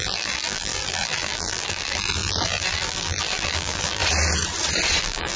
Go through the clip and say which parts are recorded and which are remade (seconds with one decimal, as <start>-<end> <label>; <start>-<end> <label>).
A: 0.0-4.0 remade; 4.0-5.0 recorded; 5.0-5.4 remade